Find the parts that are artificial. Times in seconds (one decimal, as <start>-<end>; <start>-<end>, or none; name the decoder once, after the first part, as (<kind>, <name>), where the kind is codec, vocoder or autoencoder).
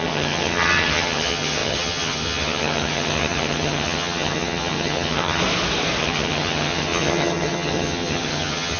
0.0-5.4 (vocoder, HiFi-GAN); 6.0-8.8